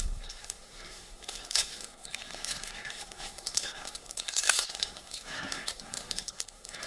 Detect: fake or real fake